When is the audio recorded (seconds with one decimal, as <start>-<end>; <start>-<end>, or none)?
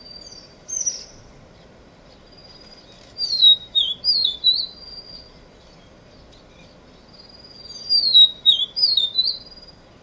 0.0-10.0